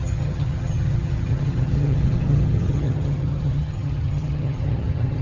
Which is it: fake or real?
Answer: fake